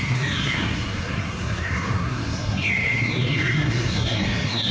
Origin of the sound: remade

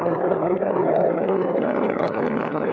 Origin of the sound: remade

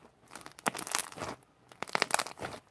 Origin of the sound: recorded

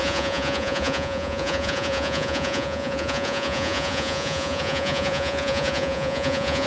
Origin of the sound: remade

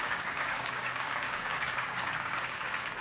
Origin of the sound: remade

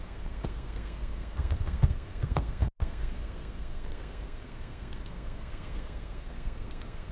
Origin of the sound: remade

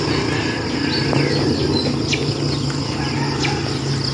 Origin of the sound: recorded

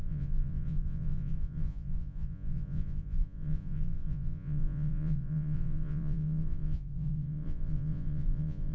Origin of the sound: remade